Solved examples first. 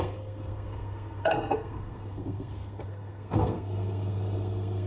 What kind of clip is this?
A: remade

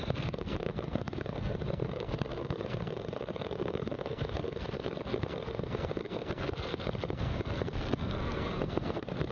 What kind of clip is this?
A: remade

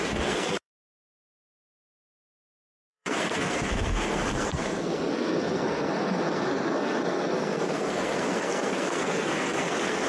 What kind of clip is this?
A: remade